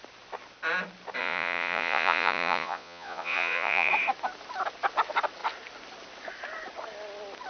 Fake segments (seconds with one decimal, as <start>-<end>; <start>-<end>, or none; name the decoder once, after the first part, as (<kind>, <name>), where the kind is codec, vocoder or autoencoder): 1.2-3.9 (vocoder, Vocos)